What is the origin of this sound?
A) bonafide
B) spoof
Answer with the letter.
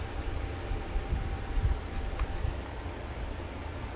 B